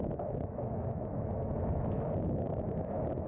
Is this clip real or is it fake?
fake